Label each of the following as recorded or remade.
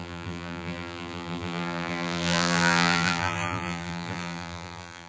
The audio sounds remade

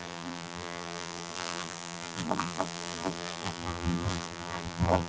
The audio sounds remade